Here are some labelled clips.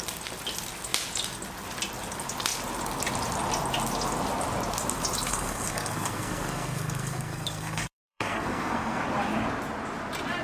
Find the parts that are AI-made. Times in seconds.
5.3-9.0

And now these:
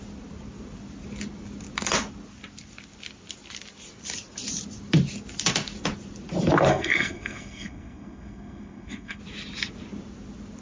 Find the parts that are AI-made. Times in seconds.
6.7-9.2

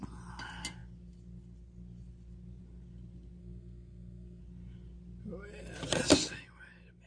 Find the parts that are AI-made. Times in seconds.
3.4-4.4